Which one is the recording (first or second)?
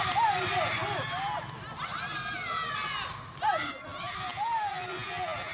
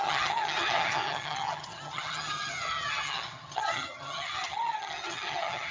first